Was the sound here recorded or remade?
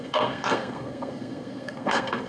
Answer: remade